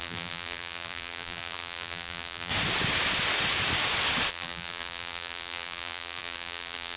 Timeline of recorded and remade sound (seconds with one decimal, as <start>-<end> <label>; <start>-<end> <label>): 0.0-2.5 remade; 2.5-4.3 recorded; 4.3-7.0 remade